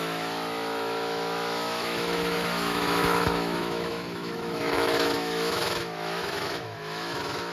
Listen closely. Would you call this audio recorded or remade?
remade